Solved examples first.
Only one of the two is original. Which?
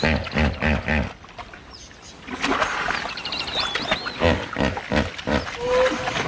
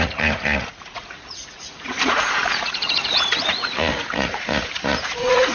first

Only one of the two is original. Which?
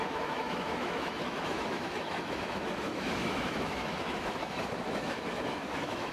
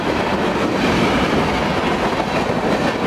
second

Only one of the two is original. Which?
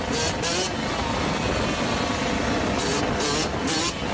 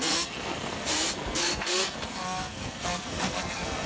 first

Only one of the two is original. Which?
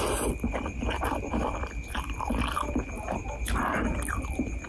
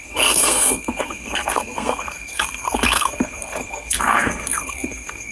first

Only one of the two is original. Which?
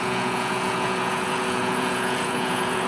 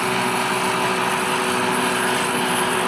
second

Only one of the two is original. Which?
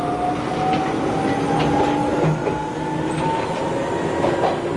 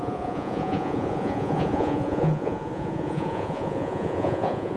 first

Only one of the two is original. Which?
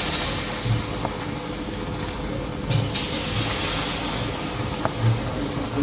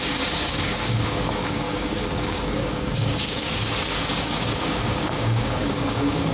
first